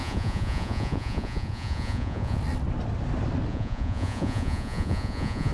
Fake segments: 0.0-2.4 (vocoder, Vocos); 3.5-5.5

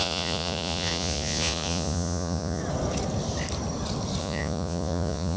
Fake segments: 0.0-2.6 (vocoder, Vocos); 4.2-5.4

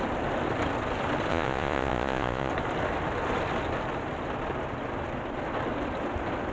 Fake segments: 1.3-2.5 (vocoder, Vocos)

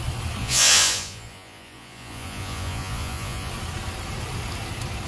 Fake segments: 0.4-3.5 (vocoder, Vocos)

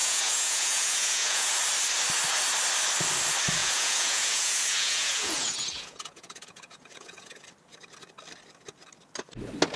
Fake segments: 0.0-1.5 (vocoder, Vocos); 3.6-7.4

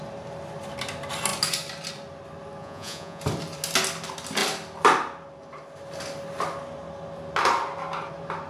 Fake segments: 2.6-3.2 (vocoder, Vocos)